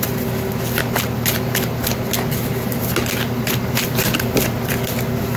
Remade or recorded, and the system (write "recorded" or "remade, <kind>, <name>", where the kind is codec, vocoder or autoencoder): recorded